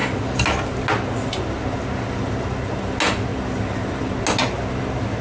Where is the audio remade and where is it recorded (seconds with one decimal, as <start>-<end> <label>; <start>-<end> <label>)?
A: 0.0-5.2 recorded